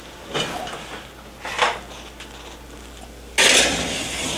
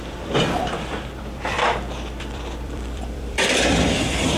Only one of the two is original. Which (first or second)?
first